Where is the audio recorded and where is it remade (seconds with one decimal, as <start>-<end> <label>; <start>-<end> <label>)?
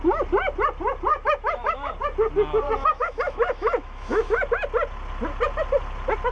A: 0.0-1.1 recorded; 1.1-1.9 remade; 1.9-2.9 recorded; 2.9-4.4 remade; 4.4-6.3 recorded